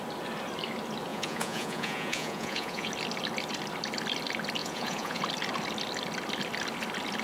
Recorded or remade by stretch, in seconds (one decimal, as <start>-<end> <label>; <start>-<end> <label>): 0.0-1.1 recorded; 1.1-2.9 remade; 2.9-4.6 recorded; 4.6-5.2 remade; 5.2-7.2 recorded